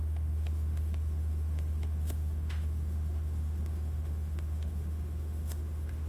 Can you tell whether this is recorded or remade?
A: remade